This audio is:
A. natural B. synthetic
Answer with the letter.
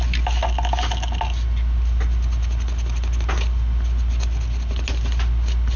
A